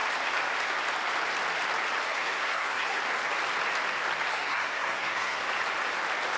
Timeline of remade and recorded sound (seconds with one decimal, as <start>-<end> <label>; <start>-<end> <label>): 0.0-2.1 recorded; 2.1-3.0 remade; 3.0-4.3 recorded; 4.3-5.5 remade; 5.5-6.4 recorded